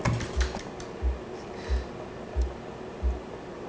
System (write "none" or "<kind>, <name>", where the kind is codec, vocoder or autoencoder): none